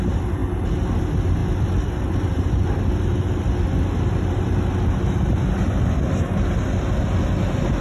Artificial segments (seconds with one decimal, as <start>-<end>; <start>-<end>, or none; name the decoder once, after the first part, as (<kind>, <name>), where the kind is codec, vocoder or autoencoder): none